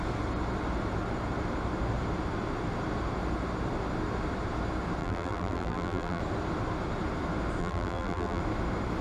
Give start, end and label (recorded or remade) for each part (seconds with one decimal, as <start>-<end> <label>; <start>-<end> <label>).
0.0-5.0 recorded; 5.0-6.2 remade; 6.2-7.6 recorded; 7.6-8.4 remade; 8.4-9.0 recorded